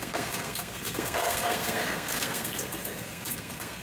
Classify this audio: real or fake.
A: fake